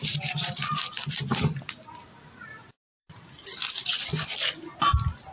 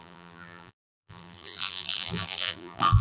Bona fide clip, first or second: first